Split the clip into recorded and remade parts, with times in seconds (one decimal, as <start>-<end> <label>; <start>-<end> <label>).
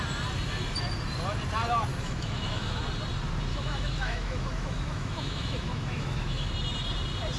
0.0-1.9 recorded; 1.9-2.8 remade; 2.8-3.5 recorded; 3.5-6.5 remade; 6.5-7.4 recorded